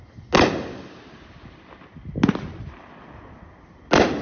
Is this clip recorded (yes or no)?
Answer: yes